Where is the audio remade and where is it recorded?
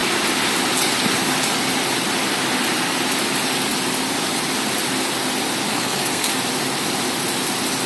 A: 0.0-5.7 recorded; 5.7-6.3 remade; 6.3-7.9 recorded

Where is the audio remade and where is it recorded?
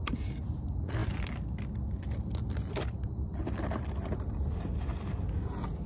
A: 0.0-5.9 recorded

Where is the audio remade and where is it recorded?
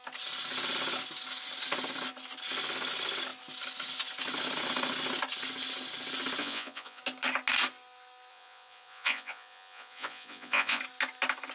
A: 0.0-6.4 recorded; 6.4-7.0 remade; 7.0-8.3 recorded; 8.3-10.8 remade; 10.8-11.5 recorded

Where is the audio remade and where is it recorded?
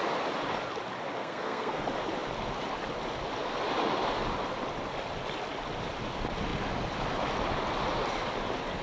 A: 0.0-1.2 recorded; 1.2-1.8 remade; 1.8-8.8 recorded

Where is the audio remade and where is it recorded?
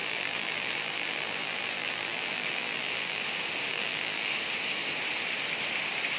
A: 0.0-3.2 remade; 3.2-3.7 recorded; 3.7-4.3 remade; 4.3-6.2 recorded